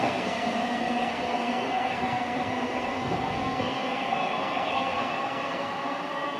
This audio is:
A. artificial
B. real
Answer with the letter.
A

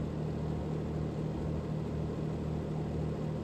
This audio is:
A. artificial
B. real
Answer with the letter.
B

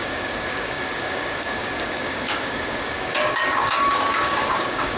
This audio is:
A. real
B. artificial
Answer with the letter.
B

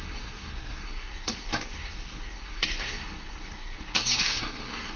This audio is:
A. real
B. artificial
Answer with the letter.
B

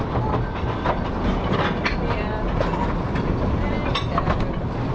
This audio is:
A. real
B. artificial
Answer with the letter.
A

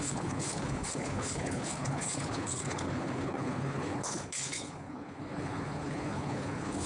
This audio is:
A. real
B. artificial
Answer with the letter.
B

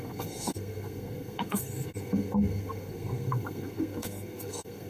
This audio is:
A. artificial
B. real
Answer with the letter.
A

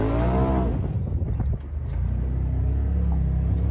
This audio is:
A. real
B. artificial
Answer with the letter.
A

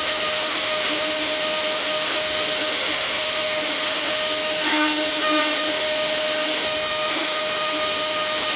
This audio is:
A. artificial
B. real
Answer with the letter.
A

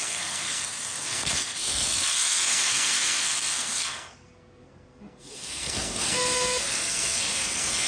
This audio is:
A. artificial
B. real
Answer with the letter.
A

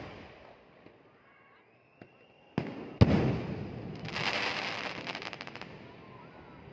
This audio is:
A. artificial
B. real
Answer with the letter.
B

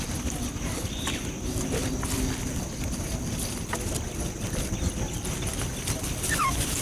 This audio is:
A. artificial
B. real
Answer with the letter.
B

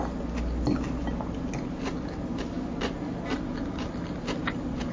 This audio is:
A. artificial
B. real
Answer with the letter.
B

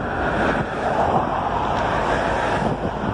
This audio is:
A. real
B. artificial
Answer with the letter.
A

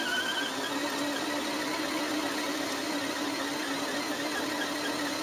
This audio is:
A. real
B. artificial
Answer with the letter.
A